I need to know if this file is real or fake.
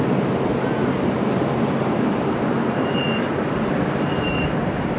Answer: fake